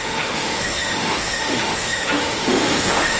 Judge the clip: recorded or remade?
remade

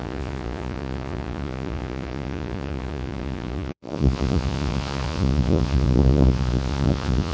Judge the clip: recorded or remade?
remade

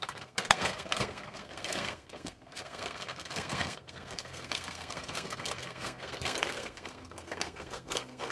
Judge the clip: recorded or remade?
remade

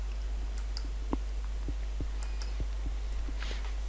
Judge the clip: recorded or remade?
recorded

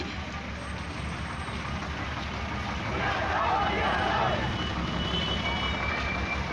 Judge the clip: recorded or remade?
recorded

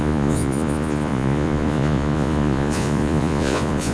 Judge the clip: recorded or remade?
remade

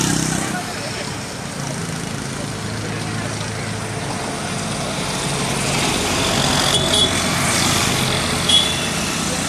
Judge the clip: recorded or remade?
recorded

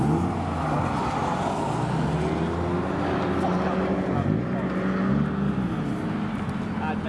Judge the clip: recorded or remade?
recorded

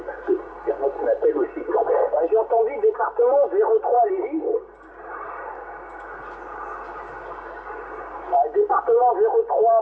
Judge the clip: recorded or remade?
recorded